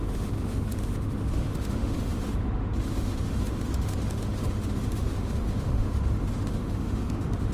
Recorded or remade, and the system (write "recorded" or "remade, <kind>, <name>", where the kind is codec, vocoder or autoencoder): remade, autoencoder, DAC-VAE